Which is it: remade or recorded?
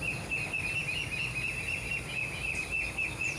recorded